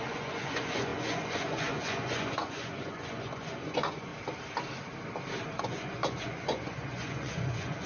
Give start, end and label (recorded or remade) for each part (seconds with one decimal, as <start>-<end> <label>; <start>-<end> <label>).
0.0-4.1 remade; 4.1-5.6 recorded; 5.6-7.9 remade